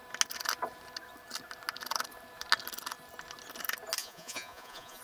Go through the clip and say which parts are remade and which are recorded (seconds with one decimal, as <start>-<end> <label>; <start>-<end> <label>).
0.0-4.0 recorded; 4.0-5.0 remade